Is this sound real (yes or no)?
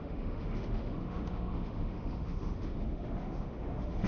no